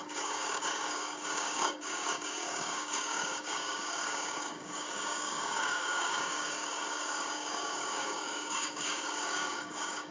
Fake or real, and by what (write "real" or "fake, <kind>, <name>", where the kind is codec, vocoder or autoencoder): fake, codec, DAC